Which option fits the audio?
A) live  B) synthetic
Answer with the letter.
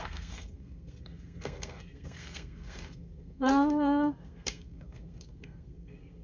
B